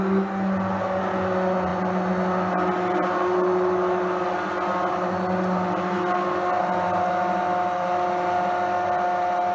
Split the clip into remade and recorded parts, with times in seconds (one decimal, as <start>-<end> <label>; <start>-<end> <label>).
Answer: 0.0-9.5 recorded